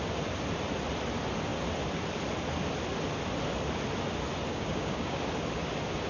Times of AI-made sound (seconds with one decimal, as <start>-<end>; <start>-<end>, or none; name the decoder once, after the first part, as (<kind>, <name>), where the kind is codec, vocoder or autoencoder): 4.5-5.2 (codec, DAC)